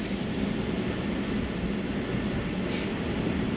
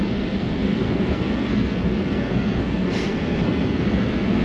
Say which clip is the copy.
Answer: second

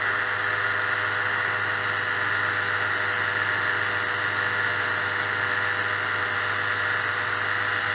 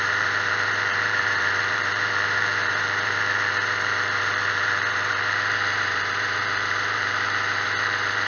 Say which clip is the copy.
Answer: second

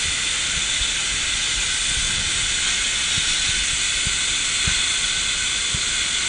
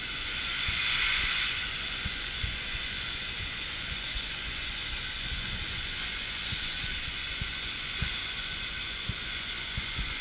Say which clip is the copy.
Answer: second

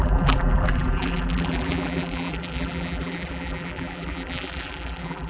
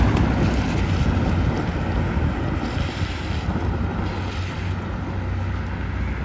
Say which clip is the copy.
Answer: first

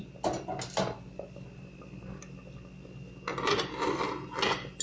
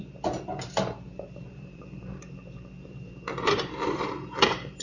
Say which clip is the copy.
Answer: second